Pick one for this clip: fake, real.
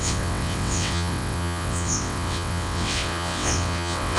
fake